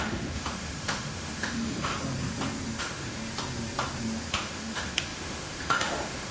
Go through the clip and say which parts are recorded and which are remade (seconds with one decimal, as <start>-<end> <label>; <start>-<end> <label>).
0.0-1.9 remade; 1.9-2.8 recorded; 2.8-3.2 remade; 3.2-4.3 recorded; 4.3-6.3 remade